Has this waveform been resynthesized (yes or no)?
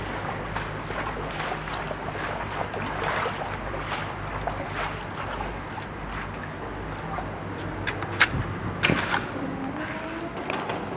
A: no